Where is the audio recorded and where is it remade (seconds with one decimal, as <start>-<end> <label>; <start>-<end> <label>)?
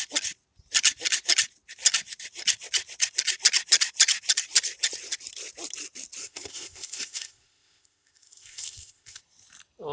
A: 0.0-6.2 recorded; 6.2-9.2 remade; 9.2-9.9 recorded